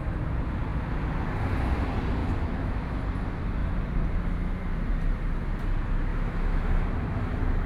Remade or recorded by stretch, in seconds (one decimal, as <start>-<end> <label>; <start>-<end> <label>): 0.0-2.2 recorded; 2.2-2.9 remade; 2.9-6.1 recorded; 6.1-6.6 remade; 6.6-7.7 recorded